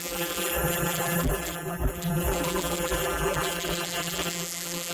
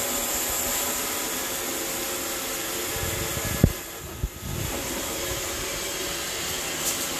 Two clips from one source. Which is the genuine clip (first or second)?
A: second